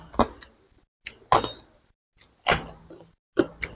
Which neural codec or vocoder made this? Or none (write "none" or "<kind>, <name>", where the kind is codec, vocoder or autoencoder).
none